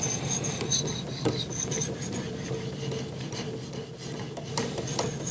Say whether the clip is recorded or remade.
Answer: recorded